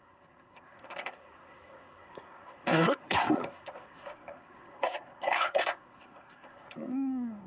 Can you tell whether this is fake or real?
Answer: fake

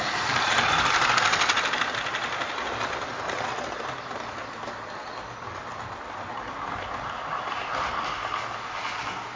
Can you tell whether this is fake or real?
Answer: real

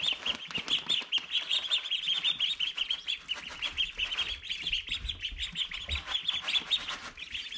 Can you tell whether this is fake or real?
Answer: real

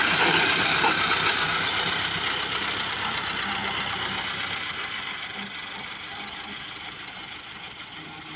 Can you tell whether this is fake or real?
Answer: real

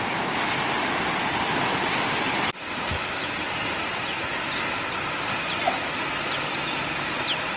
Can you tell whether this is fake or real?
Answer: real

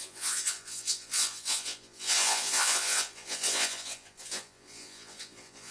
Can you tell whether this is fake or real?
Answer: fake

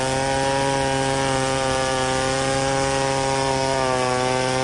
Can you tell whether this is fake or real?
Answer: real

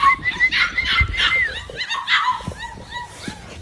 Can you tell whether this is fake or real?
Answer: real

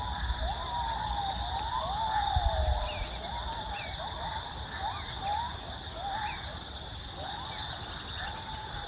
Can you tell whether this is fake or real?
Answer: real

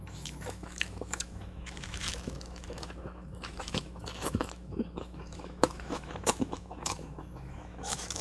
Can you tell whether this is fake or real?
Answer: fake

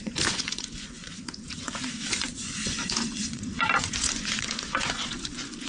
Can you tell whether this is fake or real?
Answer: fake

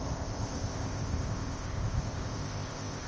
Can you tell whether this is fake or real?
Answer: fake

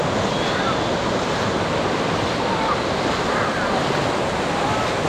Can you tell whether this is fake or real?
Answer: real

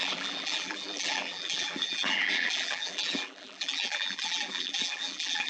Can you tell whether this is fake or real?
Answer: fake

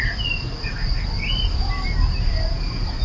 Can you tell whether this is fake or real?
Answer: real